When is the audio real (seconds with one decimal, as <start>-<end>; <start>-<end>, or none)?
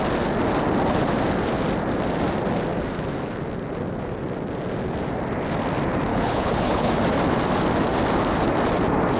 0.0-6.1; 6.9-9.2